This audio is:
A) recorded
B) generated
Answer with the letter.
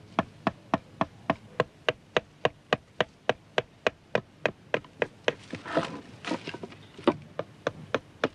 A